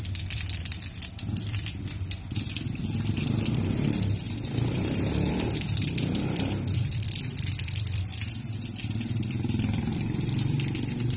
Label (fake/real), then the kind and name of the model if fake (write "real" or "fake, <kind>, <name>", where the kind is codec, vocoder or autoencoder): fake, vocoder, BigVGAN v2